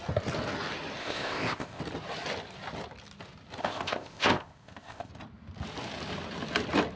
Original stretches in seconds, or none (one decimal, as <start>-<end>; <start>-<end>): 0.0-1.0; 1.8-3.6; 5.1-7.0